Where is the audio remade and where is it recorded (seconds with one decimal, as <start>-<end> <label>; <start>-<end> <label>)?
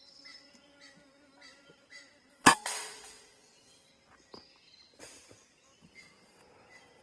0.0-2.3 recorded; 2.3-3.9 remade; 3.9-7.0 recorded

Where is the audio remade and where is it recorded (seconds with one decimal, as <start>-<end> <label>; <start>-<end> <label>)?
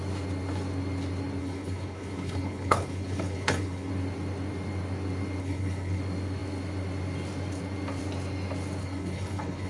0.0-1.4 recorded; 1.4-3.9 remade; 3.9-5.4 recorded; 5.4-6.0 remade; 6.0-8.8 recorded; 8.8-9.7 remade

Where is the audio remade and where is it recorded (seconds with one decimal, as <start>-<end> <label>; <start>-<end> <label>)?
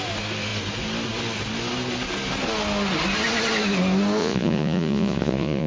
0.0-4.2 recorded; 4.2-5.7 remade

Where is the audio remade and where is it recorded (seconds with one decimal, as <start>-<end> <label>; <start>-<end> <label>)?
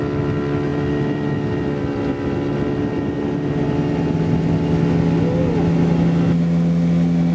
0.0-7.3 recorded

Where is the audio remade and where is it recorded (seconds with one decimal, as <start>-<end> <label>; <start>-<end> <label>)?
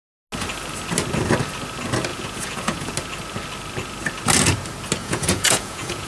0.0-2.1 recorded; 2.1-2.9 remade; 2.9-5.0 recorded; 5.0-6.1 remade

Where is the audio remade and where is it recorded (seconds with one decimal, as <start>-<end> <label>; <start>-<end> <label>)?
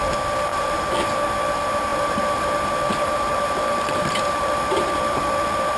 0.0-0.5 recorded; 0.5-1.1 remade; 1.1-1.9 recorded; 1.9-5.8 remade